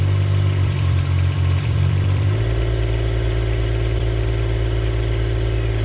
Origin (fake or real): fake